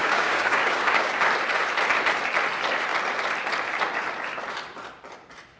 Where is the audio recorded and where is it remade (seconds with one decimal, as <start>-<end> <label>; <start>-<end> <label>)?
0.0-1.1 remade; 1.1-5.6 recorded